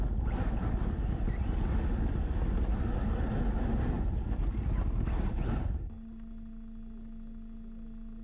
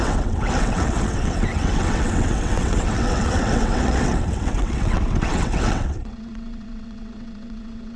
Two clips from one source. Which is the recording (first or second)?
first